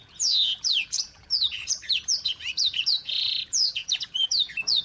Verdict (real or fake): fake